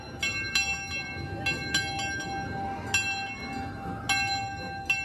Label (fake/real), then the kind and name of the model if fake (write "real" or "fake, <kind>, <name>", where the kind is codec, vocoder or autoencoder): real